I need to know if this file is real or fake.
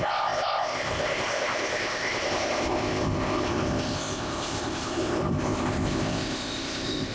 fake